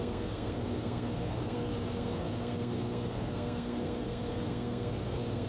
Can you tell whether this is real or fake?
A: fake